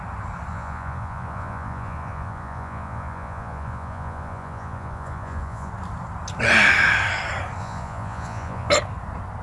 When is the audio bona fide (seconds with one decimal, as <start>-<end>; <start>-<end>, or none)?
0.0-0.5; 5.7-7.6; 8.7-9.4